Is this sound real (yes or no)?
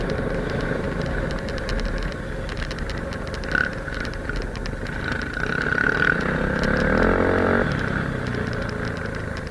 yes